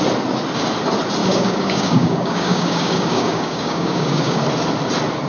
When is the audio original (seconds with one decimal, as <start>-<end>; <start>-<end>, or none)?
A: 0.0-1.2; 4.4-5.3